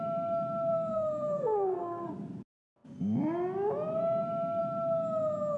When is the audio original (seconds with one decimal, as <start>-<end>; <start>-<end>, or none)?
0.0-0.7; 2.1-5.6